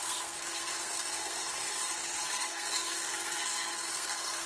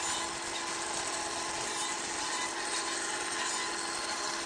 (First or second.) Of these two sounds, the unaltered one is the second